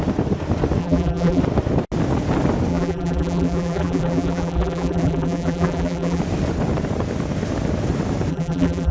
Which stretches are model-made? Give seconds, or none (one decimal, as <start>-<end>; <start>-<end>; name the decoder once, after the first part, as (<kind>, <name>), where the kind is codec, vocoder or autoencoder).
0.8-1.4 (vocoder, BigVGAN v2); 2.7-6.2; 8.3-8.9

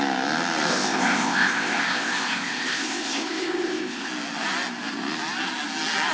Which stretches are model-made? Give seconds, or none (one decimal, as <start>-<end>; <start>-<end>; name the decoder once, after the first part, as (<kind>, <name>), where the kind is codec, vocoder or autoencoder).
0.7-4.1 (codec, ZipCodec)

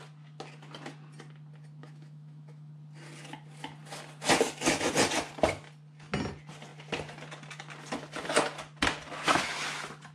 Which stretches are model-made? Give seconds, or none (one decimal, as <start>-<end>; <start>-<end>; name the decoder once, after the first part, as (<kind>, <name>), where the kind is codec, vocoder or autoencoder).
1.8-2.7 (autoencoder, DAC-VAE)

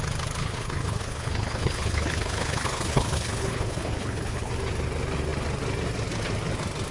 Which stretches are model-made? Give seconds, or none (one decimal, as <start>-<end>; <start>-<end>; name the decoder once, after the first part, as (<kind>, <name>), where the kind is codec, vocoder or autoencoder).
0.4-4.5 (codec, HILCodec)

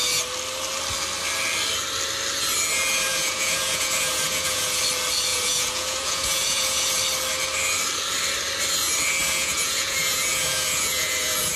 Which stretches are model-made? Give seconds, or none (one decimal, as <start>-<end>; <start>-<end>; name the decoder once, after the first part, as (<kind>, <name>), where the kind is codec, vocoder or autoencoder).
3.1-4.8 (vocoder, Vocos); 5.3-7.0; 9.2-11.6

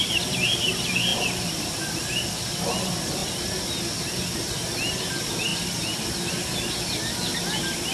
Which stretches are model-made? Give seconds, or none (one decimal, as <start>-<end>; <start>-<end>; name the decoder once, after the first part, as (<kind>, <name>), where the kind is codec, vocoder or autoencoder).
none

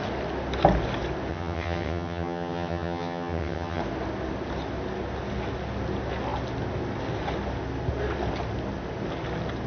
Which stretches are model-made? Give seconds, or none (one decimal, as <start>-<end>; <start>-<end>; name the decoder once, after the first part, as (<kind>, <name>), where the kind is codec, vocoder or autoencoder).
1.3-3.8 (vocoder, HiFi-GAN)